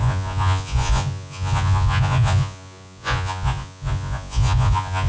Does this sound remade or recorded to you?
remade